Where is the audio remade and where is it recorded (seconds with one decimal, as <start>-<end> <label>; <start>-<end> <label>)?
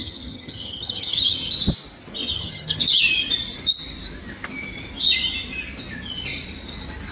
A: 0.0-1.4 remade; 1.4-2.2 recorded; 2.2-2.9 remade; 2.9-7.1 recorded